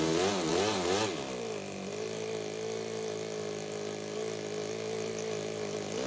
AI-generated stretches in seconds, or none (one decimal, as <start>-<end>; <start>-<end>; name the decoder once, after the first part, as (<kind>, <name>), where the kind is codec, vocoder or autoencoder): none